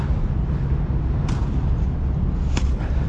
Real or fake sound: real